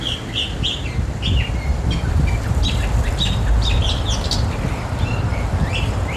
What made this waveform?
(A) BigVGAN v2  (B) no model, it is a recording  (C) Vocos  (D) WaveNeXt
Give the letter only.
B